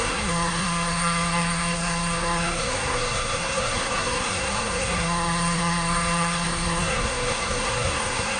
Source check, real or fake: fake